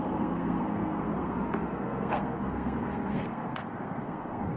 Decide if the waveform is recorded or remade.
remade